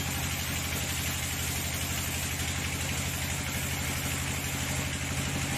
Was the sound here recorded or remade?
recorded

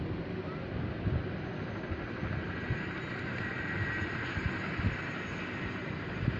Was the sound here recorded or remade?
recorded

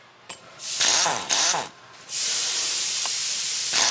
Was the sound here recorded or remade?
remade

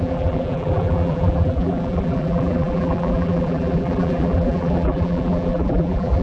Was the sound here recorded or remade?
remade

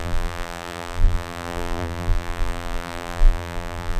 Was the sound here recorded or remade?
remade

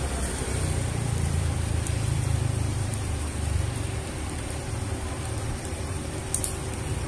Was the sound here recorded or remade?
remade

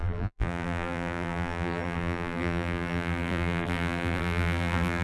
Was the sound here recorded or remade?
remade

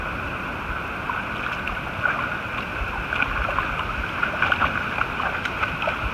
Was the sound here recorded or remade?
recorded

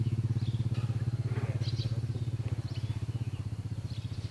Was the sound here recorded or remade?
recorded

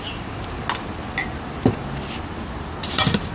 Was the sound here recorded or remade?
recorded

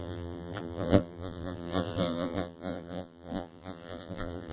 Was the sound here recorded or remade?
remade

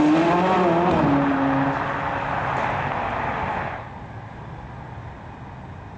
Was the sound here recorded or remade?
recorded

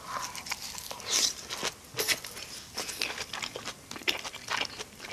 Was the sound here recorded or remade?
recorded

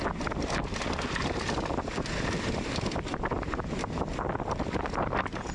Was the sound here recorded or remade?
recorded